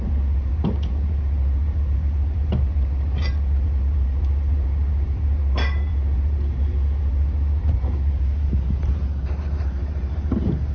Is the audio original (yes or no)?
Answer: no